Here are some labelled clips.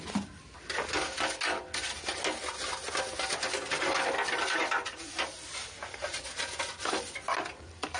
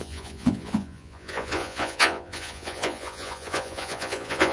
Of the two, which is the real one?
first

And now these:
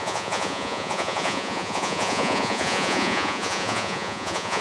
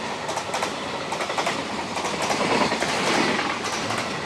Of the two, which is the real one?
second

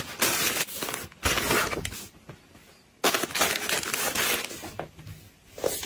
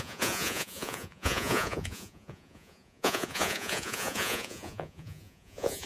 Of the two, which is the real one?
first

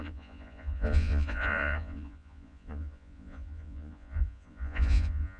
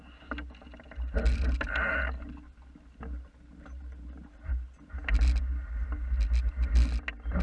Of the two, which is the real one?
second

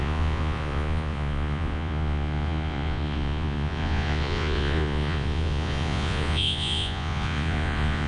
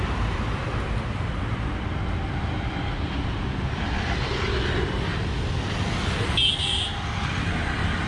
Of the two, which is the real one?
second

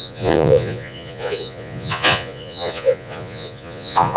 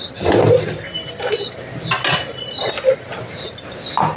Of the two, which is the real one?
second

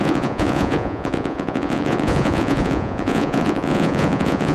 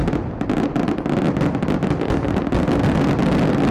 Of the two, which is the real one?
second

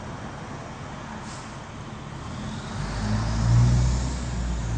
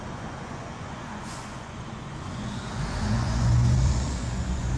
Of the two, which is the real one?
first